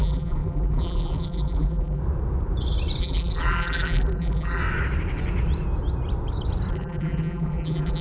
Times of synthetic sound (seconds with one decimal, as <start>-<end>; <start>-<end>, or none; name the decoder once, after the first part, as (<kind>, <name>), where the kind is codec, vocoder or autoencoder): 0.0-2.0 (vocoder, BigVGAN v2); 3.0-4.6; 6.7-8.0